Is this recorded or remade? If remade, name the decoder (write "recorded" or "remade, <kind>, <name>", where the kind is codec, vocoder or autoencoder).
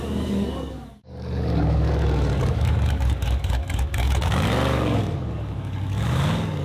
remade, codec, DAC